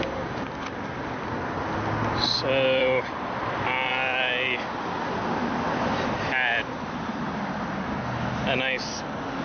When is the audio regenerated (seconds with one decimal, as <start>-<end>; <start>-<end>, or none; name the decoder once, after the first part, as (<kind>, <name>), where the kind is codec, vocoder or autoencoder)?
2.8-3.9 (vocoder, BigVGAN v2)